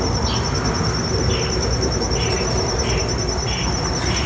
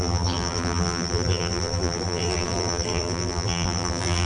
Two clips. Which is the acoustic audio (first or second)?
first